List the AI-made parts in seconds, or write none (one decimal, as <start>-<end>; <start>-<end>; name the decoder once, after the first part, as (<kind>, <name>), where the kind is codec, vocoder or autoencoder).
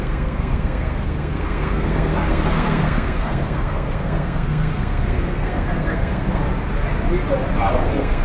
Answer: 0.0-6.4 (codec, SNAC); 7.7-8.2